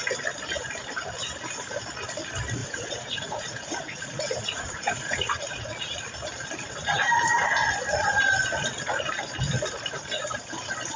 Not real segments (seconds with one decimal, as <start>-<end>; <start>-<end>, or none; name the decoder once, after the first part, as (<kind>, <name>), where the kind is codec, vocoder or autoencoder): 2.6-5.9 (vocoder, Vocos)